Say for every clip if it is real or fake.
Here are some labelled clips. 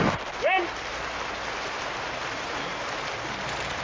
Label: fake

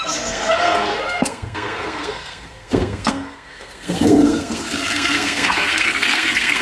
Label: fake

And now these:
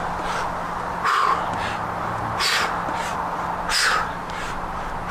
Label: real